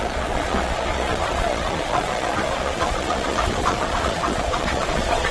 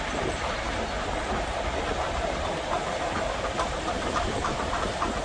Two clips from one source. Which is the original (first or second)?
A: second